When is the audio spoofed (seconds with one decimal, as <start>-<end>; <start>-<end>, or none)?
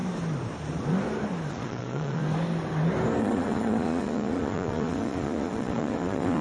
1.5-2.2; 3.2-6.4